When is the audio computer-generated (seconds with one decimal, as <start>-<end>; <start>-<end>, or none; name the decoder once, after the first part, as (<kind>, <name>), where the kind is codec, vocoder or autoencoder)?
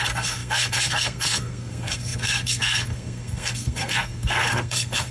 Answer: 0.0-5.1 (codec, SNAC)